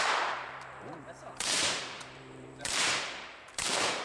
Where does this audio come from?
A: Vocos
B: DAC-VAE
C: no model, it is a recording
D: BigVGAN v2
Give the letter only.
D